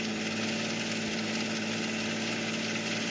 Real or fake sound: real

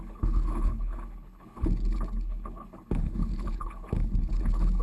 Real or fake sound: fake